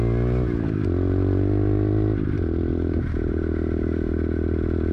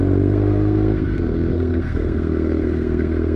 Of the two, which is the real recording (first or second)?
first